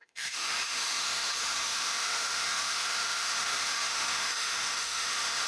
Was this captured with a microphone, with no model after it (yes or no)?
no